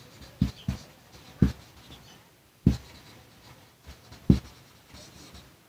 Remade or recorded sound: recorded